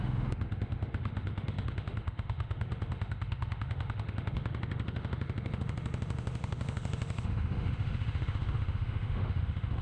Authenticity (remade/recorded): remade